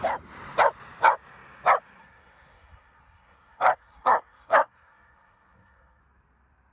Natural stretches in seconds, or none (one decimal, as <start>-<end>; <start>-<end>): 0.0-2.0; 6.0-6.7